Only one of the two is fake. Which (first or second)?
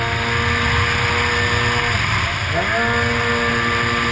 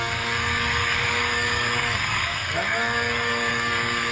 second